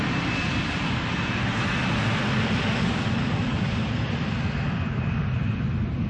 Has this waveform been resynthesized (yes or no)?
yes